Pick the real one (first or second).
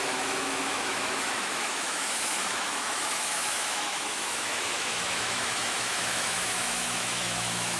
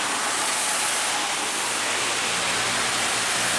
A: second